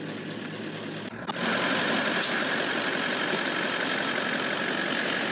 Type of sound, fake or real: real